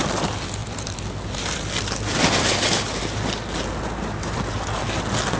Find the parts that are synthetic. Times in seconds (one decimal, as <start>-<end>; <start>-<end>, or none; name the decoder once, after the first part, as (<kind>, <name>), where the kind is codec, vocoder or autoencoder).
none